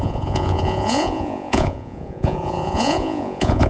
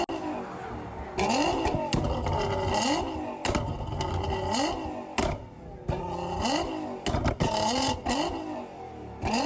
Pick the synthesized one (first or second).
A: first